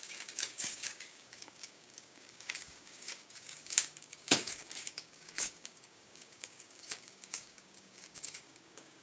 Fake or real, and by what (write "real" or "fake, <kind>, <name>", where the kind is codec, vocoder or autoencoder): fake, codec, DAC